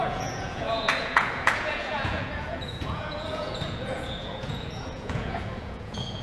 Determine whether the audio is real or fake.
fake